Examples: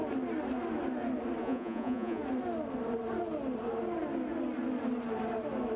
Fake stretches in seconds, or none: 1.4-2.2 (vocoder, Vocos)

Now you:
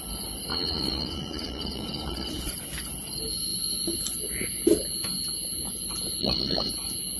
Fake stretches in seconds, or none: 0.5-2.5 (vocoder, Vocos); 6.2-6.7